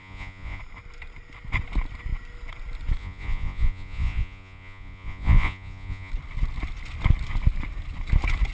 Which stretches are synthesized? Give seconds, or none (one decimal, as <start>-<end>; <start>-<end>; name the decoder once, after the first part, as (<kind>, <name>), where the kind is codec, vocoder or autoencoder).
0.0-0.6 (vocoder, Vocos); 3.0-6.1